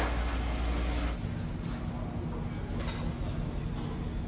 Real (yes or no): yes